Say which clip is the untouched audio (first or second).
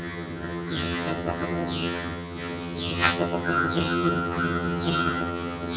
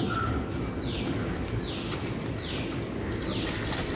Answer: second